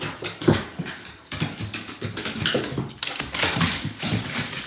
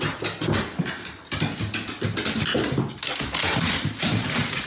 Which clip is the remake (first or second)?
first